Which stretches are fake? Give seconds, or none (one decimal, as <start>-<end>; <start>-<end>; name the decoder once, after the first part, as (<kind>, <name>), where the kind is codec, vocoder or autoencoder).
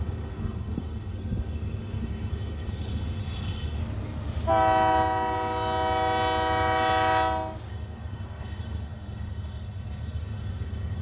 0.0-3.8 (codec, SNAC); 7.7-11.0